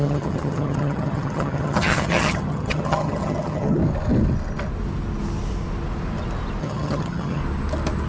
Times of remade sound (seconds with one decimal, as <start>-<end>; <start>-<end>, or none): 0.0-3.8; 6.6-7.4